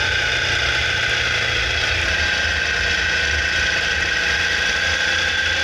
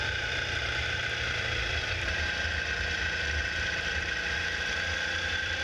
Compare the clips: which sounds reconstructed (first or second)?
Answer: second